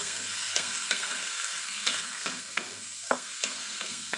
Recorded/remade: remade